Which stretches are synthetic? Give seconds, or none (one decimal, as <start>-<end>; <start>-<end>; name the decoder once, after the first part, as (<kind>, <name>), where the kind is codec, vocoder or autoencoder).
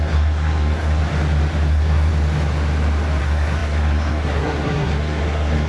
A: 0.0-1.0 (codec, SNAC); 1.7-2.1; 3.2-5.7